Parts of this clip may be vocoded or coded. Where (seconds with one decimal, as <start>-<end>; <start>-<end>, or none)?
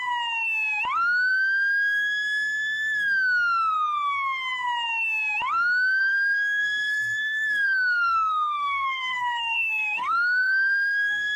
6.0-11.4